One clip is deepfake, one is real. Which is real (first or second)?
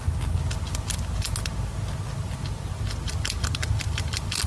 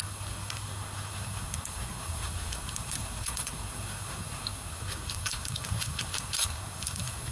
first